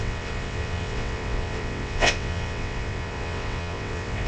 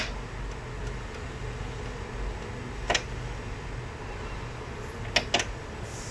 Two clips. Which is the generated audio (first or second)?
first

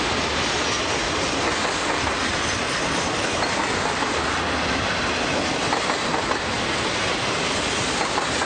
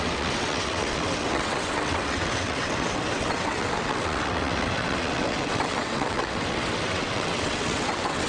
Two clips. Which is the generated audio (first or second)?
second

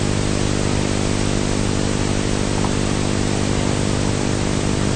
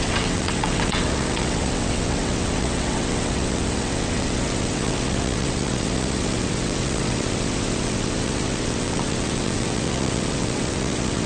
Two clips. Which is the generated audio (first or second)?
second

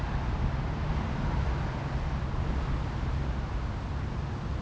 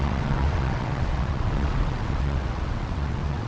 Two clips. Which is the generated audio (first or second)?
second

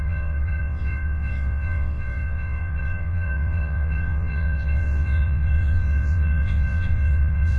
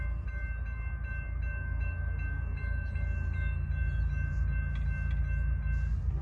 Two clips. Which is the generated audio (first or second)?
first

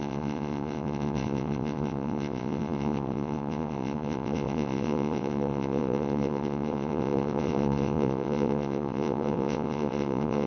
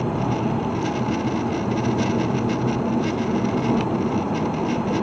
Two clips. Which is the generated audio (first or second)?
first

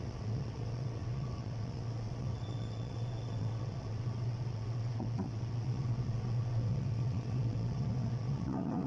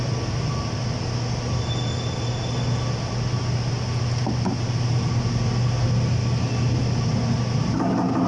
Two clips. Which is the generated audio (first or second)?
first